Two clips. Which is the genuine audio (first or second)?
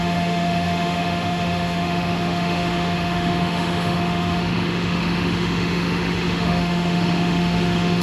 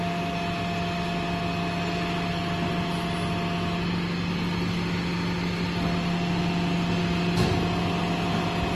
second